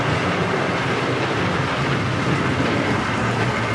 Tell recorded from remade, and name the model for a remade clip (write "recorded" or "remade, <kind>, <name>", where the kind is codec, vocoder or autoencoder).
recorded